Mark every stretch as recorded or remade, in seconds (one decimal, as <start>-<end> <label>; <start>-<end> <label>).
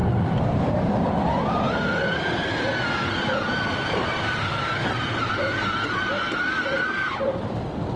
0.0-1.4 remade; 1.4-8.0 recorded